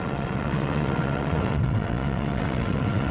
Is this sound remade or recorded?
remade